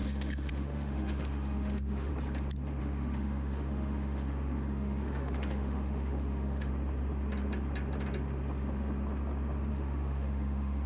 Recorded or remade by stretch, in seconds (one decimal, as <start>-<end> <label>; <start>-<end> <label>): 0.0-2.1 remade; 2.1-2.8 recorded; 2.8-6.7 remade; 6.7-9.7 recorded; 9.7-10.9 remade